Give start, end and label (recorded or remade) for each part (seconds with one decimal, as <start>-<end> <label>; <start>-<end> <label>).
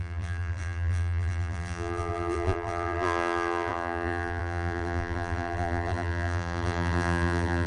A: 0.0-7.7 remade